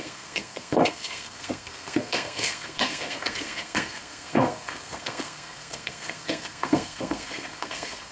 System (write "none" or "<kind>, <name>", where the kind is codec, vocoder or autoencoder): codec, SNAC